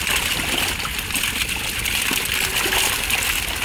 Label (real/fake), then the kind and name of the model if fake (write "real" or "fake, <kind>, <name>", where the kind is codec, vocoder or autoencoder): real